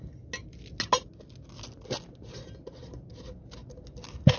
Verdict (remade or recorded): recorded